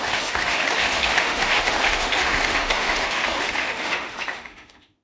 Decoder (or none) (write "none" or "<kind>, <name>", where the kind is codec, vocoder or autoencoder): autoencoder, DAC-VAE